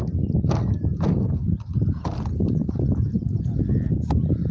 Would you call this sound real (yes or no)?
yes